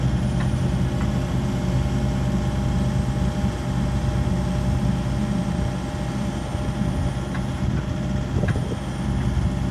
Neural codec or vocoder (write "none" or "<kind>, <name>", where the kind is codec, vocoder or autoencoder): none